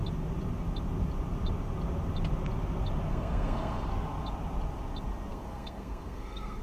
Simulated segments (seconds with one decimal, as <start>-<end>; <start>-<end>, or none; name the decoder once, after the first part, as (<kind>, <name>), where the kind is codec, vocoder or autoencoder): 3.1-3.9 (codec, SNAC); 5.3-6.6